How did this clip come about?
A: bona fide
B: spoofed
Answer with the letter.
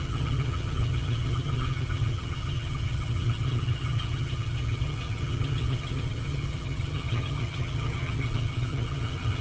B